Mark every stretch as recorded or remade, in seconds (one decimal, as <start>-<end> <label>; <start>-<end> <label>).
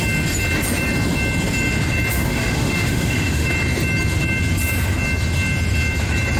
0.0-2.1 recorded; 2.1-3.5 remade; 3.5-6.4 recorded